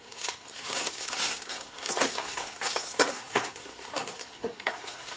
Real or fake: fake